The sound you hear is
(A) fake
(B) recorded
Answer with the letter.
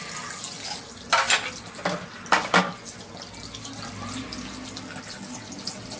B